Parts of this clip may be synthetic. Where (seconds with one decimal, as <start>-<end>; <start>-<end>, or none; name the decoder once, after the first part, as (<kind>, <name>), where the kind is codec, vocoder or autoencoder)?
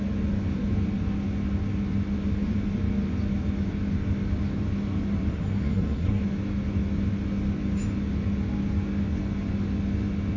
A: 5.3-6.2 (codec, SNAC)